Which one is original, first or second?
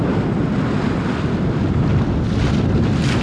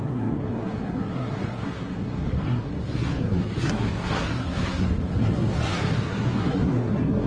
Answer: first